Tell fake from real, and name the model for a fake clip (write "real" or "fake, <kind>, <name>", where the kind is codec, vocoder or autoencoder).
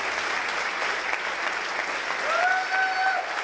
real